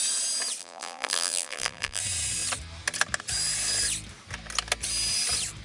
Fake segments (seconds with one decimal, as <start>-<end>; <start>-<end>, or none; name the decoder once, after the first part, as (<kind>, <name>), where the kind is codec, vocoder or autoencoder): 0.6-2.0 (vocoder, BigVGAN v2)